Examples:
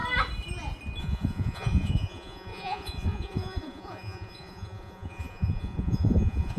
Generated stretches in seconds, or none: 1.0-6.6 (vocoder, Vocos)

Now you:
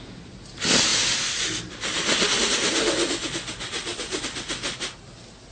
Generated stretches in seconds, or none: none